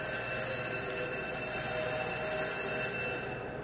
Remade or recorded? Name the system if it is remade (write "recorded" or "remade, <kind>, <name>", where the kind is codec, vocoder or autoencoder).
recorded